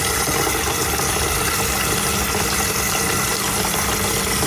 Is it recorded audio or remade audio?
recorded